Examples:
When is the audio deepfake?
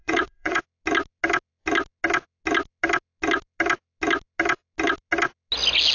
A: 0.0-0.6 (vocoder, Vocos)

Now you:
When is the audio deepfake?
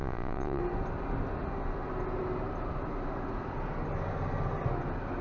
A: 0.0-0.6 (vocoder, Vocos)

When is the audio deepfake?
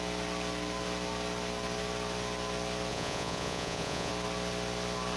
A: 2.9-4.1 (vocoder, Vocos)